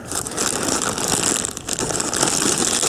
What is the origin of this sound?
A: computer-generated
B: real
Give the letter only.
B